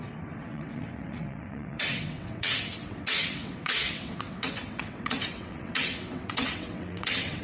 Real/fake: fake